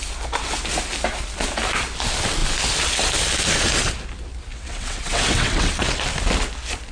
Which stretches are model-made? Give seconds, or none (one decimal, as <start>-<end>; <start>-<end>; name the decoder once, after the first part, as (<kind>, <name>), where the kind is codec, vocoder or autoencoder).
4.5-6.0 (vocoder, WaveNeXt)